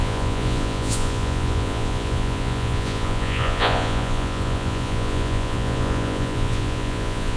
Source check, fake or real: fake